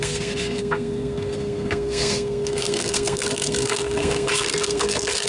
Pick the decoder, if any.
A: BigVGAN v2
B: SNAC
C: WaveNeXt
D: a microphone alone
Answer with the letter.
B